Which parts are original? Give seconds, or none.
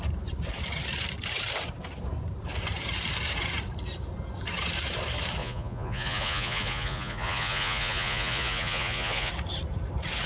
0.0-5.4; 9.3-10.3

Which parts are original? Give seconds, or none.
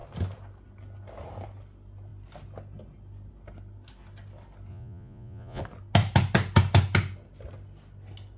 0.0-4.7; 5.6-8.4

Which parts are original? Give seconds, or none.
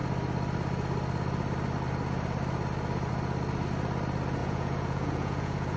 0.0-4.4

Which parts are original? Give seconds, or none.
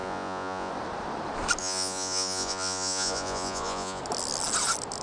0.7-1.6; 4.0-5.0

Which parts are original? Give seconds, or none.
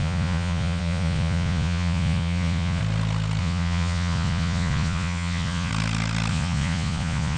2.8-3.4; 5.7-6.3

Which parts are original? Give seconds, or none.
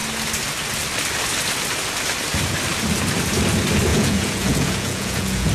0.0-3.9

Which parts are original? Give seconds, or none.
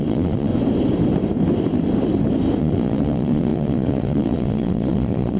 0.5-2.6